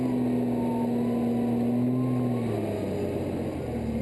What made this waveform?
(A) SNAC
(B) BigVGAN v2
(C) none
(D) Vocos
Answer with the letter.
C